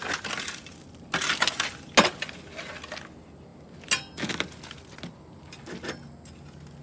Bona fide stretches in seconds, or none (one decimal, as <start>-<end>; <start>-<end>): 0.0-6.8